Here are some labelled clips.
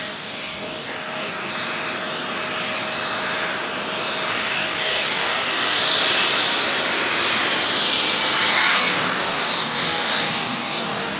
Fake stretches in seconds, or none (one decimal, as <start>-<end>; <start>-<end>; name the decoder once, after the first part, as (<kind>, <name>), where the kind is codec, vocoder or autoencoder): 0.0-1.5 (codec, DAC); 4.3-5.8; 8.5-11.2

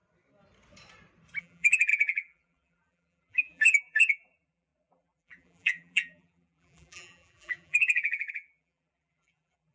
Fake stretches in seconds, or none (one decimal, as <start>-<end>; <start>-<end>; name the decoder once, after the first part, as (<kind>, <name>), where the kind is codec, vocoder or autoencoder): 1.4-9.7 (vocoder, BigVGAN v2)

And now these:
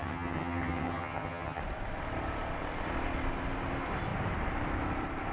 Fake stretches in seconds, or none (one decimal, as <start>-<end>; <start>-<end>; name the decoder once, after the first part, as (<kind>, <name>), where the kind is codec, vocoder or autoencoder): 0.0-1.6 (vocoder, HiFi-GAN)

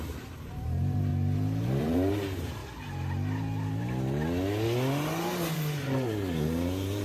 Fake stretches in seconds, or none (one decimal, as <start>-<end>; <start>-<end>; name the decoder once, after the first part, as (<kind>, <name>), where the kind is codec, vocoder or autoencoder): 0.0-1.1 (vocoder, BigVGAN v2); 1.8-2.6; 5.5-7.0